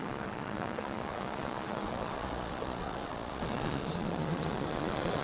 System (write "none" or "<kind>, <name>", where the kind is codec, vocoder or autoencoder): vocoder, Vocos